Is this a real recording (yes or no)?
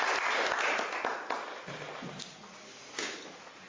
yes